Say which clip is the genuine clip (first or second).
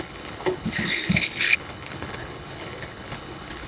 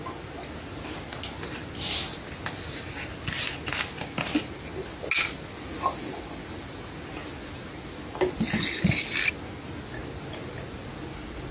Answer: second